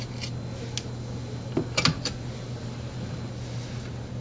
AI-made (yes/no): no